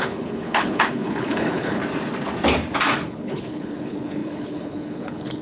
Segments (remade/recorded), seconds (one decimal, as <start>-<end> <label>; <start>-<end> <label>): 0.0-1.8 remade; 1.8-3.1 recorded; 3.1-5.4 remade